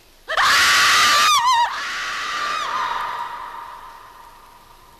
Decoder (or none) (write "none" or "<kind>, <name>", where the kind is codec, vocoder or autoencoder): none